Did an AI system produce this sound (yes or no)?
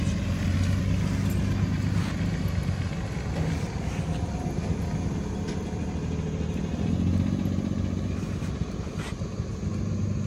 no